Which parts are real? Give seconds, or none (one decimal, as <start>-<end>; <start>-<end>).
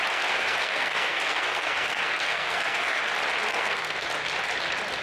3.0-3.5; 4.1-5.0